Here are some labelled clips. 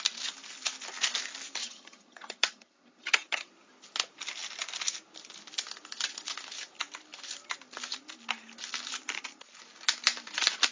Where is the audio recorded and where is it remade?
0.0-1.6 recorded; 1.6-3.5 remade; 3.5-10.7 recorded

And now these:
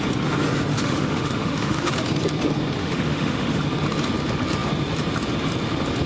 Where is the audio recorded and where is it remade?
0.0-0.7 recorded; 0.7-1.9 remade; 1.9-2.8 recorded; 2.8-3.6 remade; 3.6-6.1 recorded

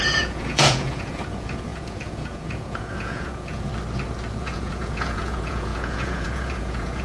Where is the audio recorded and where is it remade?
0.0-3.7 remade; 3.7-4.4 recorded; 4.4-7.0 remade